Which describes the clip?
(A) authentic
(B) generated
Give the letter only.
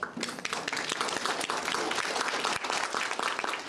A